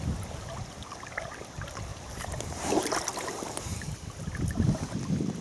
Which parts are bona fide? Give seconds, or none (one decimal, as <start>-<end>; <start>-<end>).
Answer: 0.0-1.9; 2.9-5.4